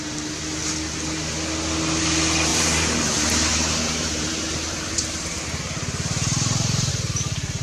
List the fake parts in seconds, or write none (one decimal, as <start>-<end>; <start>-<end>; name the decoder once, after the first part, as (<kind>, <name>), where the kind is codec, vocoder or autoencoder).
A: 2.5-6.9 (vocoder, BigVGAN v2)

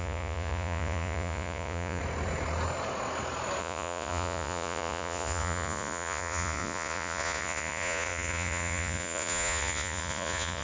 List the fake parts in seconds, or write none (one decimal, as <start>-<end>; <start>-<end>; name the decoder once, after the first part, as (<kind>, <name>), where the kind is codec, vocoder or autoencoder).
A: 0.0-2.0 (vocoder, Vocos); 3.6-10.6

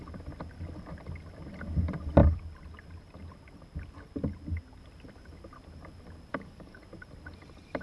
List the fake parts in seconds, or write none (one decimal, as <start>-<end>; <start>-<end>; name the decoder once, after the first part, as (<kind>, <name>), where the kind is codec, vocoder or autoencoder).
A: 6.3-6.8 (codec, DAC)

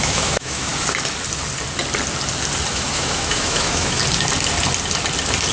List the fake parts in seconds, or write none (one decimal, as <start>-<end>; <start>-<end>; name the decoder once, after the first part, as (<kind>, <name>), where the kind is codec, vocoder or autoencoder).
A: 0.0-0.7 (autoencoder, DAC-VAE); 2.7-4.0

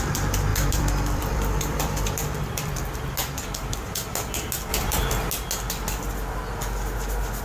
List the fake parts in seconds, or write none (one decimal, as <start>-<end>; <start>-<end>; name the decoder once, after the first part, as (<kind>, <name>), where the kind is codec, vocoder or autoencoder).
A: 0.5-3.1 (vocoder, BigVGAN v2); 4.7-5.3

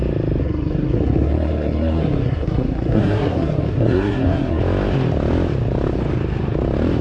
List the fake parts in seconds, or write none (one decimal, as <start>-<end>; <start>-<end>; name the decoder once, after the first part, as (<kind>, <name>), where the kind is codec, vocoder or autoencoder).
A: 0.4-4.6 (codec, SNAC)